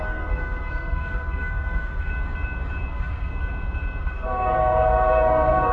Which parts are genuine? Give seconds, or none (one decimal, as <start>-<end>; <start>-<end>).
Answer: 2.1-2.9; 3.3-4.0